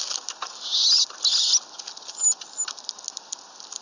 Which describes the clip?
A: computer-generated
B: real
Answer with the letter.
B